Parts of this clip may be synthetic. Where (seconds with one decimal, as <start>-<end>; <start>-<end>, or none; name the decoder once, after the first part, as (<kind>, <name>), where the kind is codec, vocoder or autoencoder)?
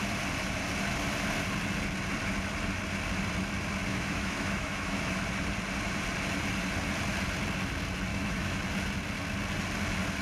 3.9-5.2 (autoencoder, DAC-VAE); 8.1-8.6